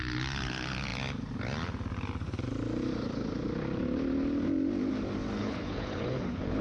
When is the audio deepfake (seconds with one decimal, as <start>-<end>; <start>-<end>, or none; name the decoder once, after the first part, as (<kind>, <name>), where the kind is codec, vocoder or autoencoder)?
5.4-6.6 (codec, HILCodec)